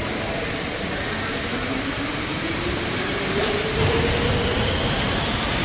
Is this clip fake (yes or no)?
yes